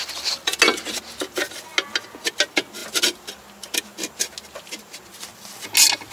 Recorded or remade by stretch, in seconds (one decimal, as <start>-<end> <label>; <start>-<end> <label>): 0.0-6.1 recorded